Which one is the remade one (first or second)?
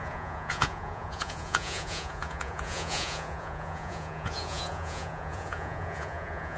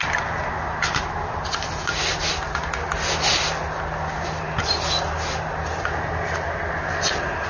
first